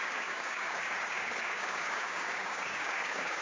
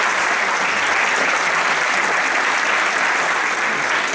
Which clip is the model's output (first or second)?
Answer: first